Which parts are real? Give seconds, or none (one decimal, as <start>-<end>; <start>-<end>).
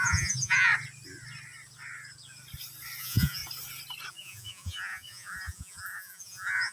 0.7-3.0; 3.4-4.1